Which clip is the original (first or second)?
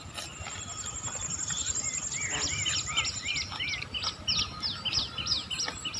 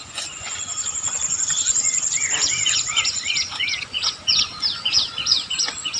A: first